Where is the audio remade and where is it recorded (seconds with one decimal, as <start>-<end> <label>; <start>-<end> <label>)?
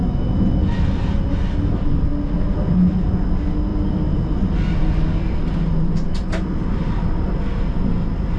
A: 0.0-3.7 recorded; 3.7-5.3 remade; 5.3-8.4 recorded